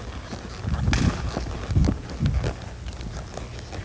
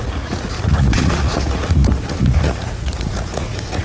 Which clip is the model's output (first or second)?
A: second